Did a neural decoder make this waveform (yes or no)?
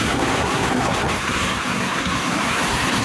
yes